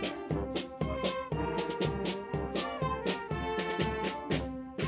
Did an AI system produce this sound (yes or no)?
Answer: no